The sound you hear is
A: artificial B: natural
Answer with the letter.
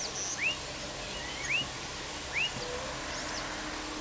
B